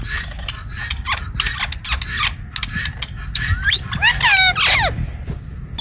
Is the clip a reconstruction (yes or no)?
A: no